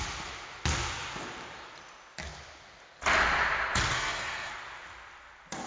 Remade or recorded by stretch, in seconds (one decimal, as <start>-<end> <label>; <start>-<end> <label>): 0.0-3.9 recorded; 3.9-4.5 remade; 4.5-5.7 recorded

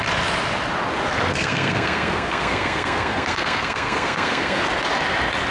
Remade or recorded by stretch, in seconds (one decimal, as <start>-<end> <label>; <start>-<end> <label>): 0.0-1.3 recorded; 1.3-4.6 remade; 4.6-5.5 recorded

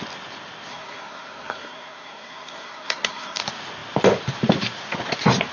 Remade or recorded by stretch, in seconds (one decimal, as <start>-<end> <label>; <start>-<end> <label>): 0.0-0.7 recorded; 0.7-3.4 remade; 3.4-5.5 recorded

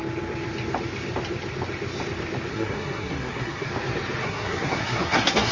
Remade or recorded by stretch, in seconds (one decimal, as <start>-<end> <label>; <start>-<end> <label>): 0.0-2.5 recorded; 2.5-3.7 remade; 3.7-4.2 recorded; 4.2-5.5 remade